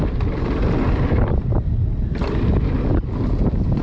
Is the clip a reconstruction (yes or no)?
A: no